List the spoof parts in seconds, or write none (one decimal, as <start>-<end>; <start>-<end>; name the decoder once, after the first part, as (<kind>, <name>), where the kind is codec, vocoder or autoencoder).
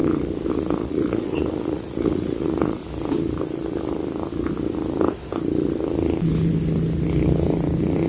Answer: 0.5-2.8 (vocoder, Vocos)